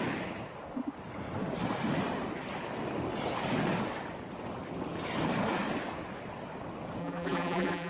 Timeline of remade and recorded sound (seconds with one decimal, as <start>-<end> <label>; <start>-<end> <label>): 0.0-7.0 recorded; 7.0-7.9 remade